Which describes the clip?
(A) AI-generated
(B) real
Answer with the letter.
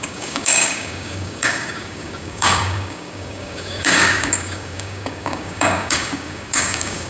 A